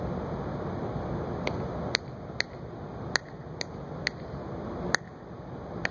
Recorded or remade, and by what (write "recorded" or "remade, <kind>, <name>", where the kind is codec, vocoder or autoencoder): recorded